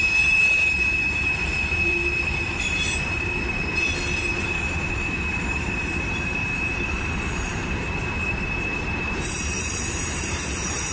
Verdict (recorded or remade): remade